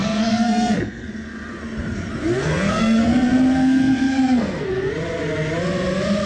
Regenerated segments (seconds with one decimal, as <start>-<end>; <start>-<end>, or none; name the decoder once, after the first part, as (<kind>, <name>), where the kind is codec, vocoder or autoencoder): 0.0-1.1 (codec, SNAC); 2.4-4.7